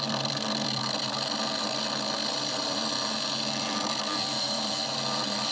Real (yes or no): no